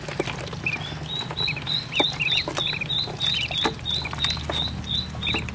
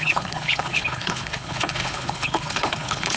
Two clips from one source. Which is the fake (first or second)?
second